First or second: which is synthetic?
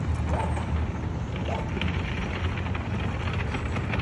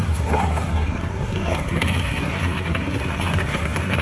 second